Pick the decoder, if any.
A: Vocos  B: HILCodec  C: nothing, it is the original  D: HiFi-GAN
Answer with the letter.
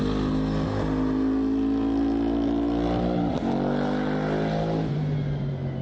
C